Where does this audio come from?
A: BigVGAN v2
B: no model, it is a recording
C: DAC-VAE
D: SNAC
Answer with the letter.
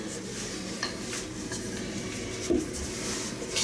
B